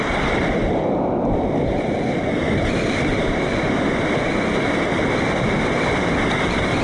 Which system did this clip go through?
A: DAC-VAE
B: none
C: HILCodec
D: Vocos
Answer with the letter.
B